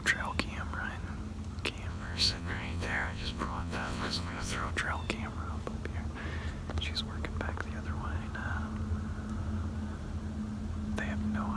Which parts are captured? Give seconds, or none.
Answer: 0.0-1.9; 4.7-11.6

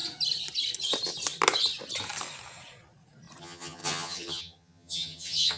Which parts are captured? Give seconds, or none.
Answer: 0.0-3.4

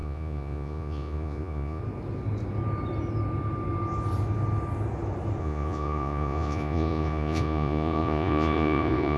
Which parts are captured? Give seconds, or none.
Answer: 1.8-5.4